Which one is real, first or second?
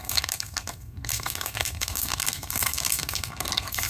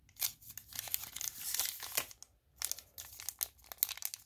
second